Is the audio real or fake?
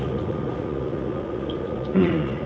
fake